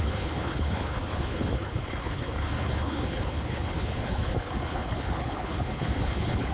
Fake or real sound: fake